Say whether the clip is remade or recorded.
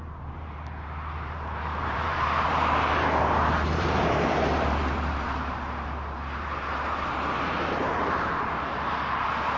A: remade